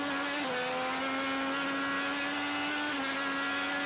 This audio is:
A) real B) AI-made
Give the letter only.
A